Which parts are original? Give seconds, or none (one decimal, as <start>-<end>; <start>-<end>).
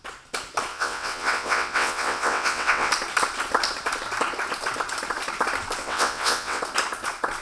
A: 0.0-0.7; 2.9-5.8; 6.6-7.4